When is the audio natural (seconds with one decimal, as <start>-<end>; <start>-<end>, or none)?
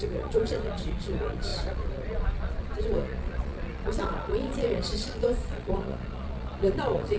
none